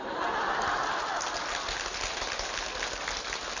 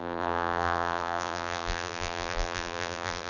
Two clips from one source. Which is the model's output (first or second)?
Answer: second